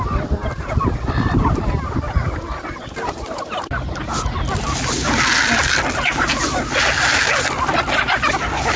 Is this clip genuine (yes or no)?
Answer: yes